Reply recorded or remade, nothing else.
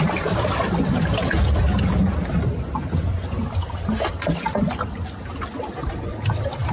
recorded